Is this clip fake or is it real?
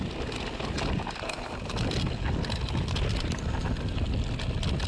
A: real